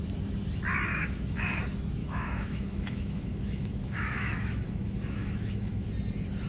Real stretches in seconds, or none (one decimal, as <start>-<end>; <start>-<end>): 0.0-0.9; 1.6-2.0; 5.9-6.5